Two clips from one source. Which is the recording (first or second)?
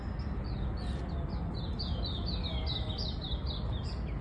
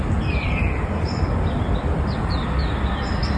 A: first